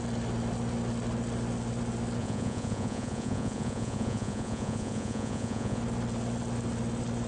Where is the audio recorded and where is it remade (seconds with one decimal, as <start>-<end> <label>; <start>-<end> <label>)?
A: 0.0-2.2 recorded; 2.2-5.8 remade; 5.8-7.3 recorded